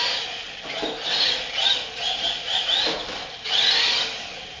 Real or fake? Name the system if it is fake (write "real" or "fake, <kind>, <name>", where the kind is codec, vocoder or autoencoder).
real